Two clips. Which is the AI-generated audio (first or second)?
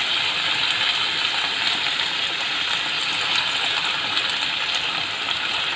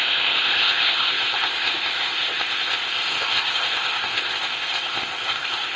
second